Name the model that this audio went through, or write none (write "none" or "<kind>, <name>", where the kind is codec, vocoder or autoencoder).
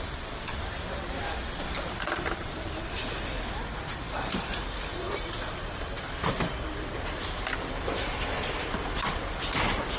vocoder, BigVGAN v2